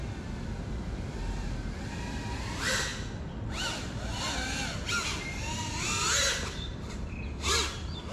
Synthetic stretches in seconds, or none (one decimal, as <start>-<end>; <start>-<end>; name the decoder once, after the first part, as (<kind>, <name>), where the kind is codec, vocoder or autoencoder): none